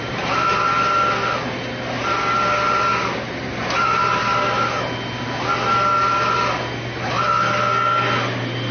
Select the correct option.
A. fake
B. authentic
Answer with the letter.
B